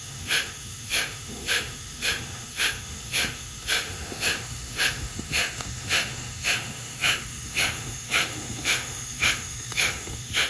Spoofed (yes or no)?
yes